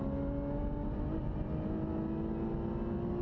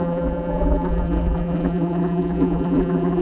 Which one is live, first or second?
first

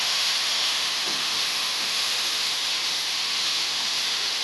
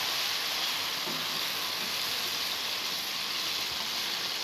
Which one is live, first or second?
second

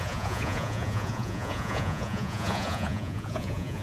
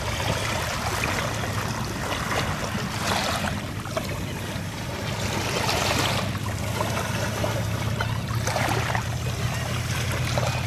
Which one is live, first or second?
second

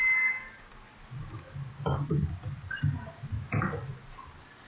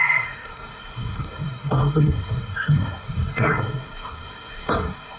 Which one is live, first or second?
first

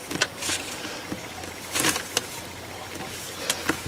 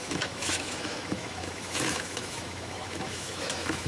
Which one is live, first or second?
first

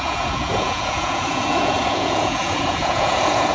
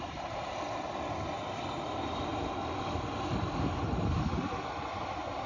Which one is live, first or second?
second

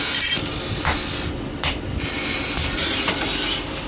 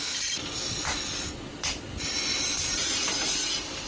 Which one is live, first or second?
first